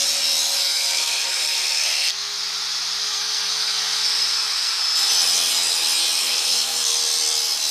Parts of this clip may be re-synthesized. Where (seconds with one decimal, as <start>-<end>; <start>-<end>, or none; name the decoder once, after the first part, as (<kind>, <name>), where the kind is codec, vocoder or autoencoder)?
0.6-2.4 (codec, SNAC); 3.0-4.8; 6.2-7.0